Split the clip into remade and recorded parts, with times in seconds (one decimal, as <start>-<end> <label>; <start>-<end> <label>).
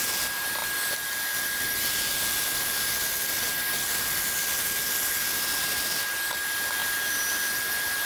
0.0-8.1 recorded